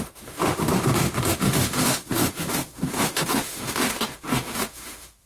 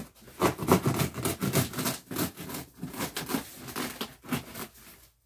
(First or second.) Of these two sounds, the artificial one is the first